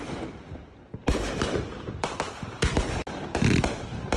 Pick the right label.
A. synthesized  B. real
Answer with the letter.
A